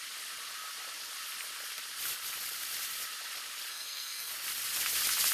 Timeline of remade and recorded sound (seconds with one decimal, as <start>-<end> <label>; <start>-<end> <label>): 0.0-3.7 recorded; 3.7-4.3 remade; 4.3-5.3 recorded